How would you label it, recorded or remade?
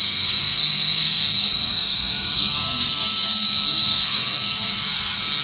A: remade